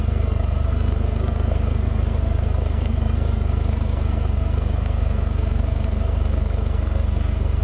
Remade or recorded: remade